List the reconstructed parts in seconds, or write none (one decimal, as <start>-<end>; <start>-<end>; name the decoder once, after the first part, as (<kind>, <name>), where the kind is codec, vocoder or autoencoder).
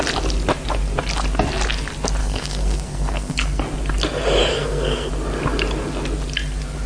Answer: 2.2-3.6 (codec, SNAC); 4.5-5.1